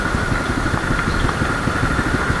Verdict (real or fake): real